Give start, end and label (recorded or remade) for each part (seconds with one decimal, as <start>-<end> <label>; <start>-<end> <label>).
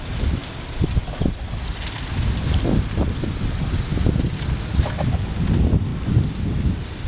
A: 0.0-7.1 recorded